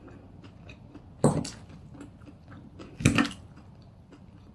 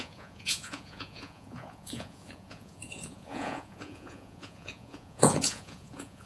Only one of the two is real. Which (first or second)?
first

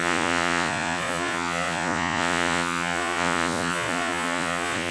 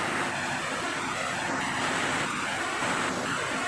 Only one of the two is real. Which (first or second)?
second